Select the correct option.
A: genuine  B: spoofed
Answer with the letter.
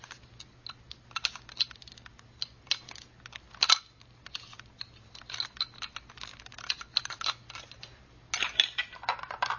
A